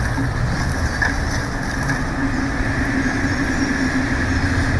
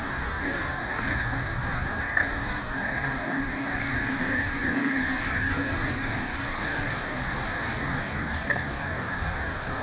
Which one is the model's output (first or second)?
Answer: second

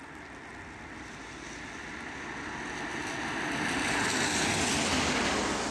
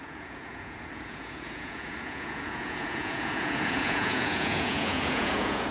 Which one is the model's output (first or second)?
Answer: second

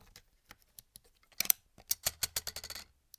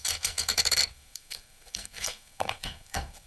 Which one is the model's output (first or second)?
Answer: second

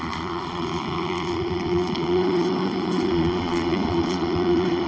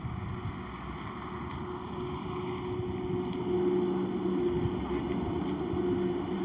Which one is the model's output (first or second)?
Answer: first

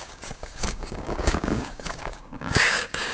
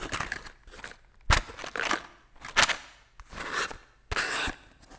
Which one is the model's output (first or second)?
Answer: first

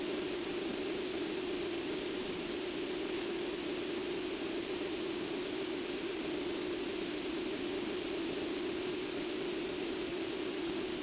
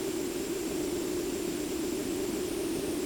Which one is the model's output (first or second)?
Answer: second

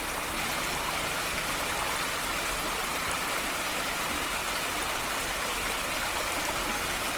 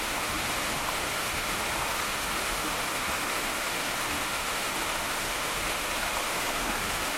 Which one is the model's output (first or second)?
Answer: second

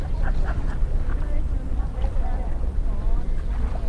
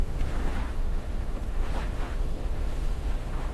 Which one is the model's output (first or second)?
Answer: second